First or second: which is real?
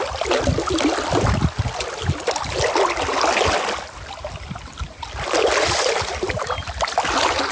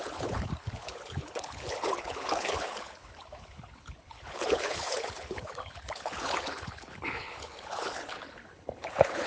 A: first